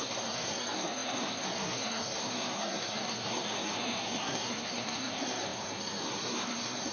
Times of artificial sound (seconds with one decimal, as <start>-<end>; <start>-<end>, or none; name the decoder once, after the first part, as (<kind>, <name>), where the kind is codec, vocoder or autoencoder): 0.0-6.9 (codec, SNAC)